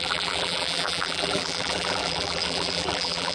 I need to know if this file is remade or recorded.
remade